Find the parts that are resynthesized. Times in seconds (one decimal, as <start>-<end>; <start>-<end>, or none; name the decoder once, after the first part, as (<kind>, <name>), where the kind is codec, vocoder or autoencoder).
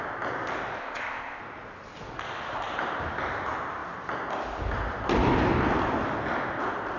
0.8-1.4 (codec, ZipCodec)